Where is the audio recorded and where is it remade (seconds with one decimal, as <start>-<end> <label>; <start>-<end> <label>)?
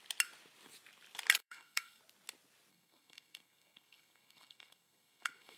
0.0-1.4 recorded; 1.4-2.0 remade; 2.0-2.7 recorded; 2.7-5.6 remade